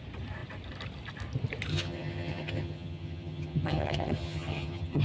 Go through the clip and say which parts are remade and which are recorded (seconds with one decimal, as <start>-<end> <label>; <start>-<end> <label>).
0.0-1.7 recorded; 1.7-5.0 remade